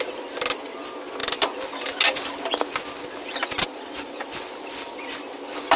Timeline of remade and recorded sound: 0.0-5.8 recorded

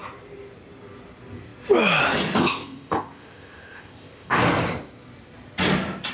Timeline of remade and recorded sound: 0.0-2.4 recorded; 2.4-4.4 remade; 4.4-6.1 recorded

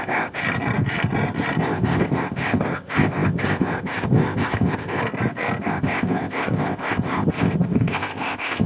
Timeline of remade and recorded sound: 0.0-0.4 remade; 0.4-1.6 recorded; 1.6-5.0 remade; 5.0-5.6 recorded; 5.6-8.7 remade